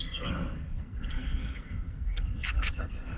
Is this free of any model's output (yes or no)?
no